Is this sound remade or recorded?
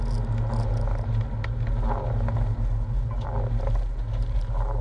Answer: recorded